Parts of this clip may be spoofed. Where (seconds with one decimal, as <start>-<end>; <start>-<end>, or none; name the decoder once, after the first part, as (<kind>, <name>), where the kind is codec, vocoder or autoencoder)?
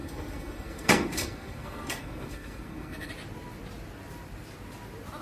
0.0-3.1 (codec, SNAC)